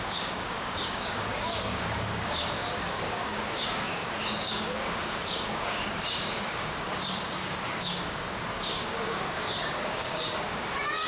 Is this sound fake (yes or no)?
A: yes